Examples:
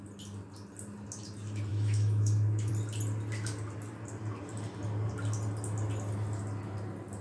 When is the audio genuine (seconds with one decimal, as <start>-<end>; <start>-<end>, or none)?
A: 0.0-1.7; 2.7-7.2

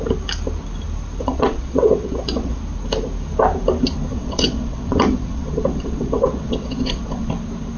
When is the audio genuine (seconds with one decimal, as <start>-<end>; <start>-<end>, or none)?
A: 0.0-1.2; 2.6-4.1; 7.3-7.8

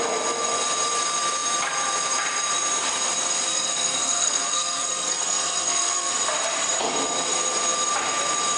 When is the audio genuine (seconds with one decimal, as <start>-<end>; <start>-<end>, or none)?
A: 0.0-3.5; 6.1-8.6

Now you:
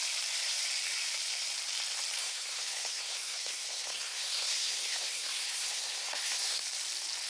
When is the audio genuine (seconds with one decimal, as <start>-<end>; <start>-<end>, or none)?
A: 0.0-2.2; 6.6-7.3

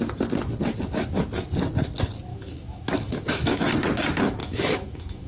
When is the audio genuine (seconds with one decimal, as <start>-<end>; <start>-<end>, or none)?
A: 0.0-2.3; 3.6-4.4

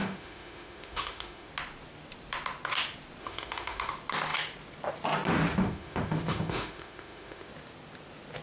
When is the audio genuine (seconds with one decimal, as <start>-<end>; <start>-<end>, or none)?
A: 1.5-3.2; 3.9-5.6; 7.5-8.4